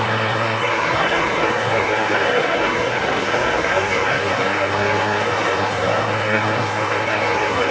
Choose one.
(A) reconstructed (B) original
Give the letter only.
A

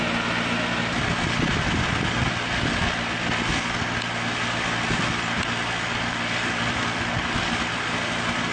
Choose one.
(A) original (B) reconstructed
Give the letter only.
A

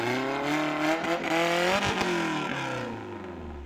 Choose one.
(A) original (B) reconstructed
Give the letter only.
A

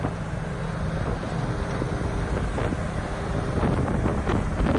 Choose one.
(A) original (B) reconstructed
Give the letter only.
A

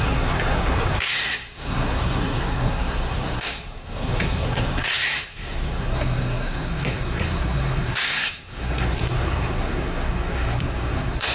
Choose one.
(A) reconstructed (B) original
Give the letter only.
A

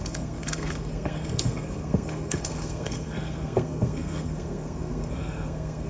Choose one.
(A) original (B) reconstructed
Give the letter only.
B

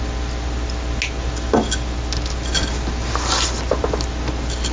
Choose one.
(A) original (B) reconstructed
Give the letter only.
A